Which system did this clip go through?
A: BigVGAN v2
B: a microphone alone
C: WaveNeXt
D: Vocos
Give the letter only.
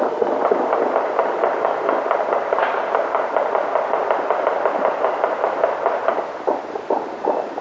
A